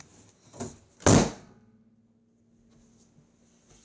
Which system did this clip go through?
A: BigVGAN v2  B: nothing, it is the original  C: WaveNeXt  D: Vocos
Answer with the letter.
B